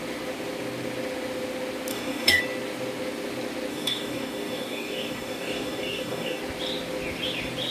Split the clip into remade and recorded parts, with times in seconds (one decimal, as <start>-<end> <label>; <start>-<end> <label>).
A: 0.0-1.9 recorded; 1.9-2.4 remade; 2.4-3.7 recorded; 3.7-6.4 remade; 6.4-7.7 recorded